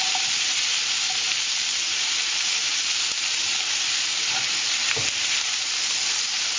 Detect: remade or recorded recorded